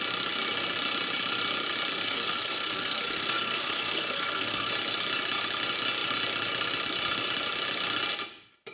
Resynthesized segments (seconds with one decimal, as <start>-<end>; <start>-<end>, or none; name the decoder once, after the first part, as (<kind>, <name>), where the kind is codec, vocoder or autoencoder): 1.9-4.7 (codec, SNAC)